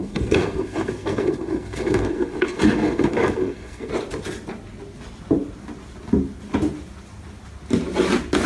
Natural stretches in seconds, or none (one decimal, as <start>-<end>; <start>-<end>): 3.9-8.5